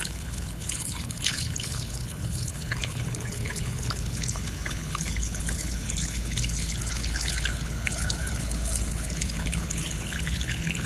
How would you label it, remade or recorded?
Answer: remade